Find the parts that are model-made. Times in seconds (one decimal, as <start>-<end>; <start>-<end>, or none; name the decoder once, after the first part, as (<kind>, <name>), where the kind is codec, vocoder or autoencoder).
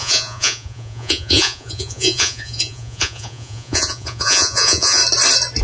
0.0-5.0 (vocoder, Vocos)